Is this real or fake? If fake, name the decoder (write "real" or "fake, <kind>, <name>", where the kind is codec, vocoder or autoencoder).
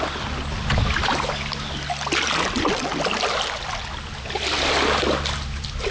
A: real